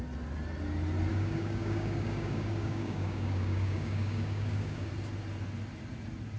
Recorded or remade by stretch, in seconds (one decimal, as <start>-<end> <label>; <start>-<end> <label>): 0.0-1.1 recorded; 1.1-4.9 remade; 4.9-6.4 recorded